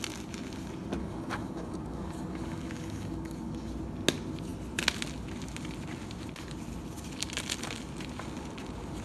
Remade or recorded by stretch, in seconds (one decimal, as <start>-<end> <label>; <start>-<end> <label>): 0.0-1.0 recorded; 1.0-3.7 remade; 3.7-9.0 recorded